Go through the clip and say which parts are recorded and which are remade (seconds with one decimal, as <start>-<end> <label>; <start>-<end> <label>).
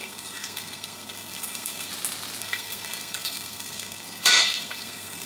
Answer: 0.0-1.9 remade; 1.9-2.4 recorded; 2.4-5.3 remade